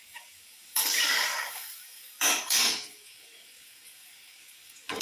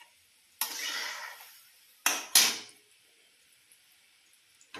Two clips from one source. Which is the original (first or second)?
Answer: second